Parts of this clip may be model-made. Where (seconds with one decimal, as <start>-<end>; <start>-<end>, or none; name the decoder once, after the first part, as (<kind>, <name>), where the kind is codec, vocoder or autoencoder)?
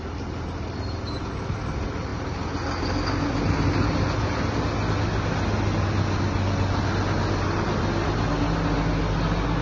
none